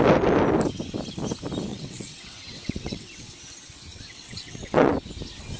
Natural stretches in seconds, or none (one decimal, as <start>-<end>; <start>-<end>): 0.0-1.7; 3.3-3.9; 4.9-5.6